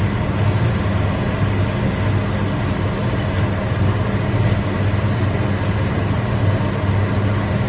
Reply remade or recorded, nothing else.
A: recorded